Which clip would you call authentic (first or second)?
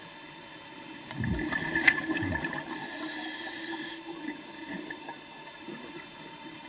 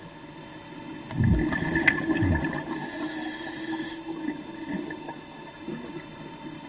second